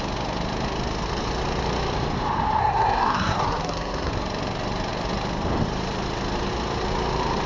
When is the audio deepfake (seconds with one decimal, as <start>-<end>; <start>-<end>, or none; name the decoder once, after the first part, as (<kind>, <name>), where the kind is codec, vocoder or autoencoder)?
2.6-4.1 (codec, SNAC)